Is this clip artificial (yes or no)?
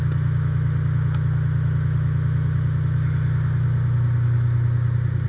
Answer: no